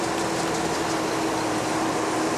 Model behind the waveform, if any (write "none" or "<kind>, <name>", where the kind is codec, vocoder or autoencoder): none